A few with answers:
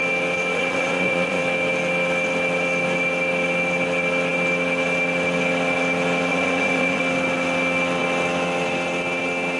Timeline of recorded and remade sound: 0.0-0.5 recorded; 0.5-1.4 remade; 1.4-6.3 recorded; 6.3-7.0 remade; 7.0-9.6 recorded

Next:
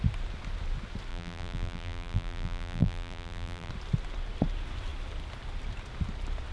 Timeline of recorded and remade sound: 0.0-1.1 recorded; 1.1-3.7 remade; 3.7-6.5 recorded

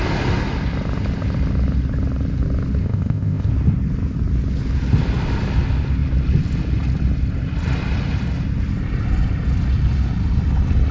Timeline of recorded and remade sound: 0.0-2.8 recorded; 2.8-3.5 remade; 3.5-10.9 recorded

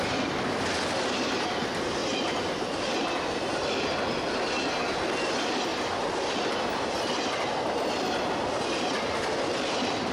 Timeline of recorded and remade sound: 0.0-2.0 recorded; 2.0-2.9 remade; 2.9-5.7 recorded; 5.7-7.1 remade; 7.1-10.1 recorded